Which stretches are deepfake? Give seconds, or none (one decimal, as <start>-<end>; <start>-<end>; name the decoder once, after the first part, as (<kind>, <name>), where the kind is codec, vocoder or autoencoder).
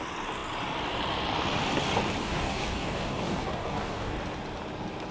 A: 2.2-4.1 (codec, DAC)